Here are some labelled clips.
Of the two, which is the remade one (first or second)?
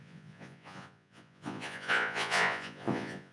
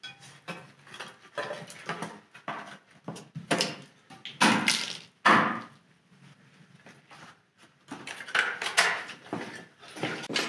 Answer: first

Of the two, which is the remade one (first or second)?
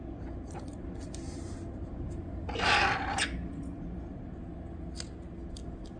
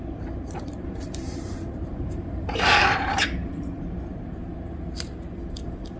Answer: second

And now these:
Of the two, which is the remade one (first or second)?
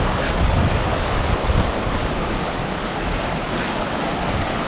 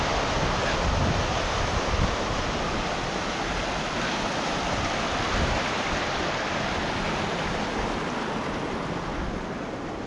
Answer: first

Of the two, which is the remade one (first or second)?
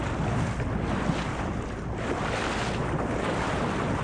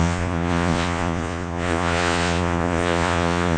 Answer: second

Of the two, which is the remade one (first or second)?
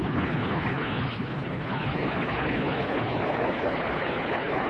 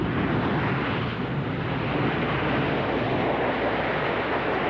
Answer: first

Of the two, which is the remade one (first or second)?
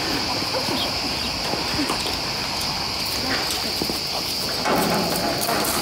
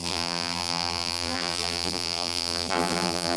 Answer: second